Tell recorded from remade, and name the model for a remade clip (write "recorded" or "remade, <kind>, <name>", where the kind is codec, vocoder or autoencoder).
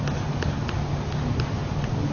recorded